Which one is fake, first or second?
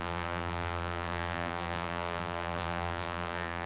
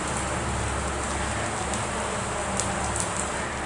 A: first